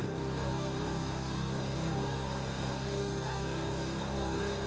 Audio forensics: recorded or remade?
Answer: remade